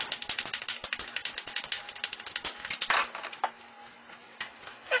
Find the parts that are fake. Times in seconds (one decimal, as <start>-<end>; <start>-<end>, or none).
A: none